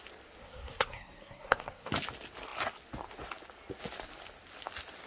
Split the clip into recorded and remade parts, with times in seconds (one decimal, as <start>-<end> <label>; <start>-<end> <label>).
0.0-0.4 recorded; 0.4-1.9 remade; 1.9-5.1 recorded

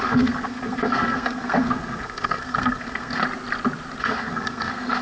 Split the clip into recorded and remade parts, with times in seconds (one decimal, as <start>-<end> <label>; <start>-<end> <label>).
0.0-3.2 remade; 3.2-4.0 recorded; 4.0-5.0 remade

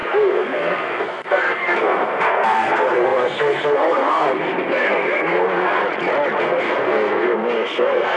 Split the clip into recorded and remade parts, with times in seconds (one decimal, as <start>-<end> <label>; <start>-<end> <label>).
0.0-5.8 remade; 5.8-6.4 recorded; 6.4-8.2 remade

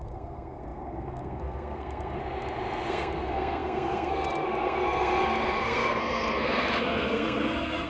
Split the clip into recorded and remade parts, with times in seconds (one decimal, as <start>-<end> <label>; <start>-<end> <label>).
0.0-2.2 remade; 2.2-2.9 recorded; 2.9-7.9 remade

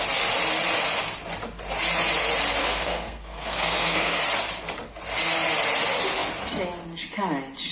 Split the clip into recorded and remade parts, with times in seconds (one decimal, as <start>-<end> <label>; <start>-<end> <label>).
0.0-2.6 recorded; 2.6-4.2 remade; 4.2-7.7 recorded